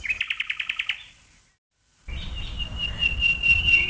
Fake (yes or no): yes